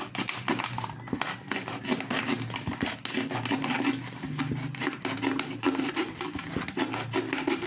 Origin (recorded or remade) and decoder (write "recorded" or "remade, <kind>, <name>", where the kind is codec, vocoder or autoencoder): recorded